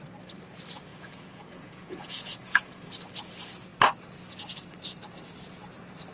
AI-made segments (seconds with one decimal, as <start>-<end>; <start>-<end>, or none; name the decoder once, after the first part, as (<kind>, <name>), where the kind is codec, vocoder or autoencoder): 0.9-2.8 (vocoder, Vocos)